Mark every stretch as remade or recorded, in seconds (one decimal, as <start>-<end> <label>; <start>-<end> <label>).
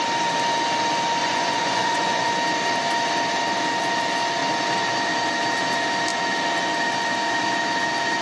0.0-1.2 recorded; 1.2-2.3 remade; 2.3-8.2 recorded